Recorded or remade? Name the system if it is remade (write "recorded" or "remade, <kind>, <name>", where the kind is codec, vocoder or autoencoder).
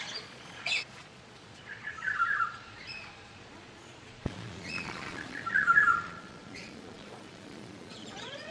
remade, vocoder, Vocos